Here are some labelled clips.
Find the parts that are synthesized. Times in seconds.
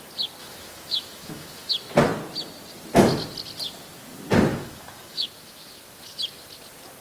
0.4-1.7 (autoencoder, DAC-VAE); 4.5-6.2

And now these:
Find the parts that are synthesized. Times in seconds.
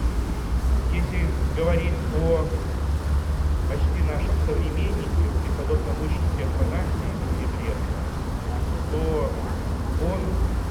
0.0-0.6 (autoencoder, DAC-VAE)